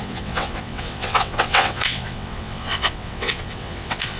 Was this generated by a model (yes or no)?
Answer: yes